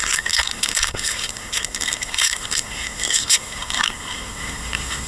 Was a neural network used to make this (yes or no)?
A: yes